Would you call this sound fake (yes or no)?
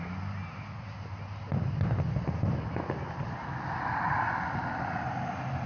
no